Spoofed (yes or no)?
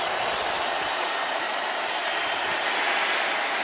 yes